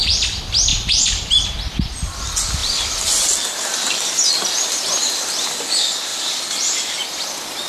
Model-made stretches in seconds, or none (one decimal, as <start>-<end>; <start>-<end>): 0.7-1.7; 6.1-7.0